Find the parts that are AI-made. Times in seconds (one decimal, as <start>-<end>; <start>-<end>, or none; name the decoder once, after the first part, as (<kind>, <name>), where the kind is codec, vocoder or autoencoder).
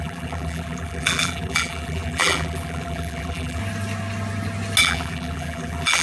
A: 0.0-3.6 (vocoder, BigVGAN v2); 4.8-6.0